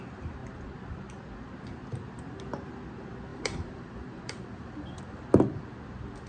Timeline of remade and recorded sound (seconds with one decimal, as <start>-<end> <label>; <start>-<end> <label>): 0.0-3.3 recorded; 3.3-5.2 remade; 5.2-6.3 recorded